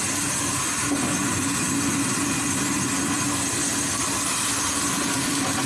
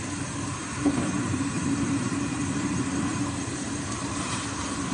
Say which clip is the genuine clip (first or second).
first